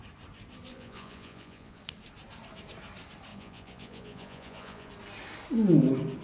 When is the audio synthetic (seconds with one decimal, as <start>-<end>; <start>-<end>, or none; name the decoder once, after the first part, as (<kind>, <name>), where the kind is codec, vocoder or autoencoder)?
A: 0.7-1.8 (vocoder, Vocos); 3.3-4.9